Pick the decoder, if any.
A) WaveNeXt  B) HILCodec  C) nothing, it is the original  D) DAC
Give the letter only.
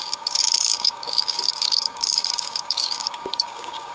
D